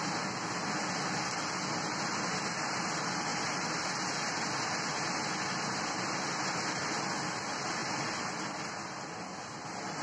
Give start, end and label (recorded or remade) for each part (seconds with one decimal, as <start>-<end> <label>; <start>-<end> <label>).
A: 0.0-10.0 recorded